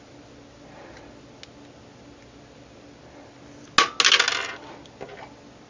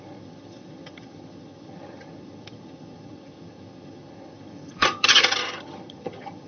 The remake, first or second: second